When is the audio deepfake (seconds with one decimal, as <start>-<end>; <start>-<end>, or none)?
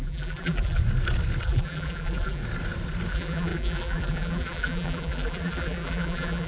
0.0-0.8; 1.4-2.4; 3.1-6.5